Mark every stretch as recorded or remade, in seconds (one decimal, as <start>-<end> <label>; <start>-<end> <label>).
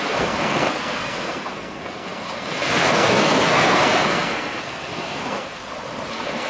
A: 0.0-5.6 remade; 5.6-6.1 recorded; 6.1-6.5 remade